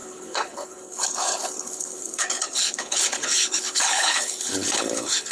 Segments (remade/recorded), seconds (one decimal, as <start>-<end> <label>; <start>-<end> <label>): 0.0-5.3 remade